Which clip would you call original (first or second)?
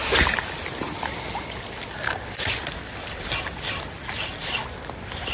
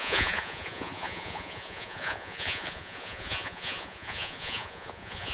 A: first